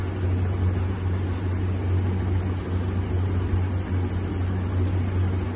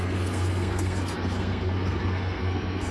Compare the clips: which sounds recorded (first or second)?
first